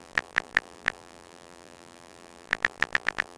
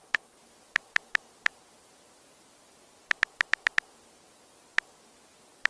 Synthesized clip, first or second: first